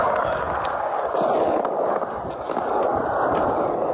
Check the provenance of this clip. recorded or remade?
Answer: recorded